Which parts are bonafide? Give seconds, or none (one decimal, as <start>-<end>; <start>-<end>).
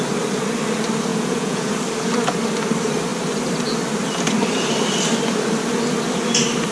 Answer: 0.0-1.1; 1.7-6.7